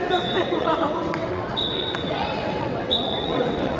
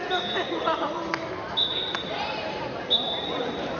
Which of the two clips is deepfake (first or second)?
first